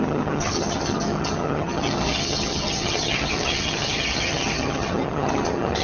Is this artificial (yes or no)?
yes